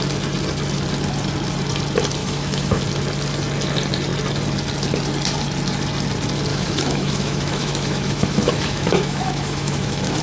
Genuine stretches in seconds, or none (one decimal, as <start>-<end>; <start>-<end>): 0.0-2.2; 2.8-6.5